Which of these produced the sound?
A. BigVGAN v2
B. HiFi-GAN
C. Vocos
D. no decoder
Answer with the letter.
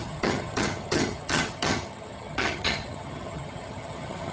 B